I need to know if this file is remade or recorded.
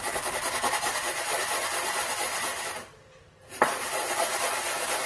recorded